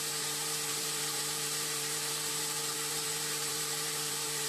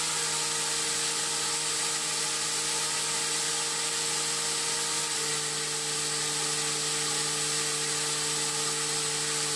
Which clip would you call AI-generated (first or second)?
first